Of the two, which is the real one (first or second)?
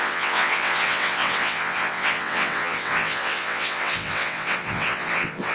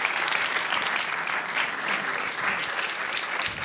second